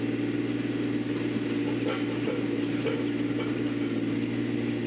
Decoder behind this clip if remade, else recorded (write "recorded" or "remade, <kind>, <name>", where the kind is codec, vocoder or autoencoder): recorded